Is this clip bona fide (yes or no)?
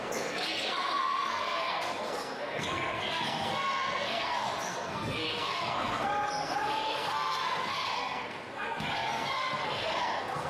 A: no